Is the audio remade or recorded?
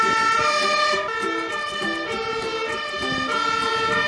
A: recorded